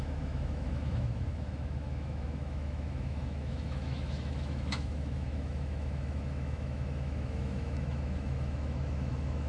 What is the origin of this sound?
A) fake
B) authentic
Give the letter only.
A